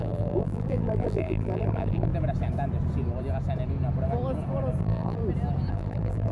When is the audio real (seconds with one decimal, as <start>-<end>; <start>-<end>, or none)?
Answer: 2.1-4.8; 5.2-5.7